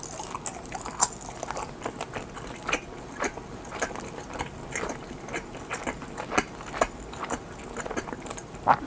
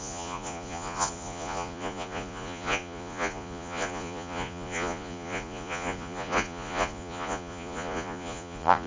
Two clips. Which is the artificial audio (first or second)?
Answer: second